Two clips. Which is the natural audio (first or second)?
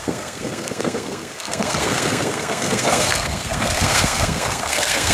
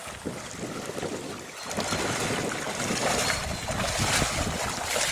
second